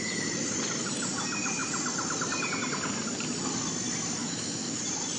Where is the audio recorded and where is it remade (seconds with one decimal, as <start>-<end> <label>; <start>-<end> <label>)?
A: 0.0-4.2 recorded; 4.2-4.8 remade; 4.8-5.2 recorded